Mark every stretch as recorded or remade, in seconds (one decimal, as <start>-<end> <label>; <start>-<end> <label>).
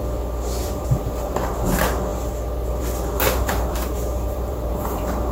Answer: 0.0-0.6 recorded; 0.6-1.5 remade; 1.5-3.2 recorded; 3.2-5.3 remade